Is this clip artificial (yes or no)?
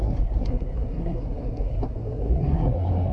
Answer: yes